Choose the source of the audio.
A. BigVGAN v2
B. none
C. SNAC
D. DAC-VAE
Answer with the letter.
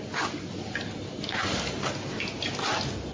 B